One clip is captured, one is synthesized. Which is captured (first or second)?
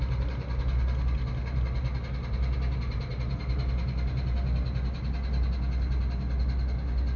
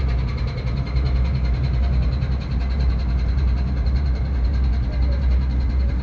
first